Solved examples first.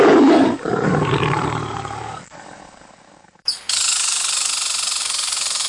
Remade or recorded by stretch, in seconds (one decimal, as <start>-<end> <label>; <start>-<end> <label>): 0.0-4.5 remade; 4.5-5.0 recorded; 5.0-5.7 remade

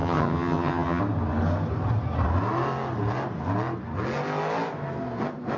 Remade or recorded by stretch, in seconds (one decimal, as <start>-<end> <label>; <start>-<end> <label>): 0.0-1.0 remade; 1.0-5.6 recorded

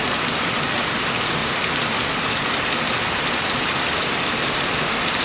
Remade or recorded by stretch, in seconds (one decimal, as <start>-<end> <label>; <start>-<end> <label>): 0.0-1.4 remade; 1.4-3.3 recorded; 3.3-5.2 remade